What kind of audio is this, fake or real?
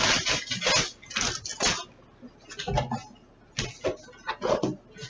real